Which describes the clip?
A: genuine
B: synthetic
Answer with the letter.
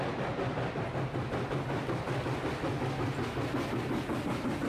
A